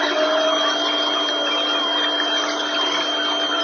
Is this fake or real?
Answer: real